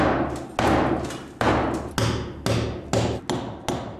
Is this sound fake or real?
real